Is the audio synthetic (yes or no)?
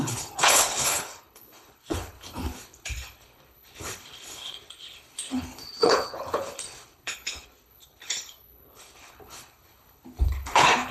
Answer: yes